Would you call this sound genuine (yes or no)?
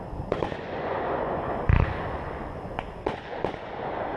no